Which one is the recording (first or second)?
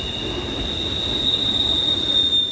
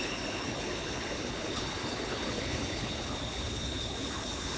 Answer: first